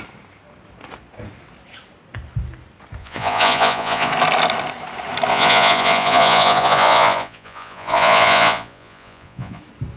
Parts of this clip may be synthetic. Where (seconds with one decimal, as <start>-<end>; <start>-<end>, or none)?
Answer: 3.0-4.1; 5.3-9.6

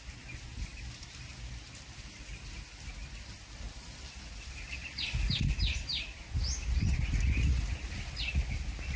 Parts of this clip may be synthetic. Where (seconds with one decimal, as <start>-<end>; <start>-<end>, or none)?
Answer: none

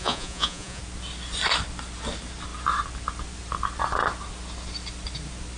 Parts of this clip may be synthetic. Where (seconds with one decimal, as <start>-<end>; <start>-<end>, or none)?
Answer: 0.0-0.8

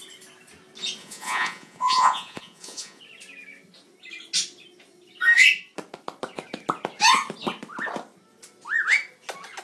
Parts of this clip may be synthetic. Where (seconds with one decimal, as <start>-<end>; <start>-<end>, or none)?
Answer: 1.0-3.0

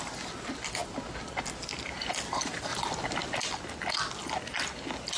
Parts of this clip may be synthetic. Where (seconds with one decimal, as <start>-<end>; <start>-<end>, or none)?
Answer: none

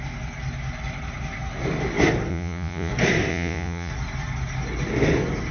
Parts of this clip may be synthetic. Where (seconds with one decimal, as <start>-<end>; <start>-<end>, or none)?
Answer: 2.3-2.9; 3.3-3.9

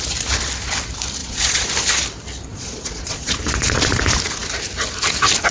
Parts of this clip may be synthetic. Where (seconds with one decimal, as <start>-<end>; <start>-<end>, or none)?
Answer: 1.2-1.7; 2.5-4.0